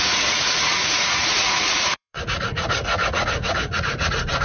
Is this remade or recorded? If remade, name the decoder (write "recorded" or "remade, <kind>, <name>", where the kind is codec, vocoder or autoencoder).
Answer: remade, vocoder, Vocos